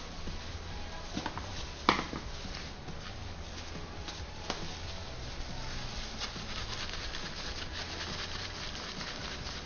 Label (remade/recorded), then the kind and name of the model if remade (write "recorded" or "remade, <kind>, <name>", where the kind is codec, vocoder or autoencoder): recorded